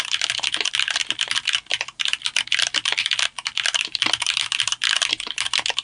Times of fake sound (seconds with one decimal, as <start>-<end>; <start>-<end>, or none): none